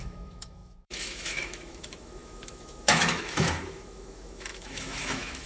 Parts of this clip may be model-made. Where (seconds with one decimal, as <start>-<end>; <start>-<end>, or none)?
0.0-5.5